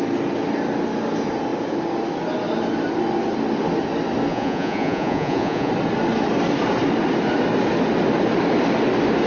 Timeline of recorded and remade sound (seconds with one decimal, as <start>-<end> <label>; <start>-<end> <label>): 0.0-4.3 recorded; 4.3-5.7 remade; 5.7-9.3 recorded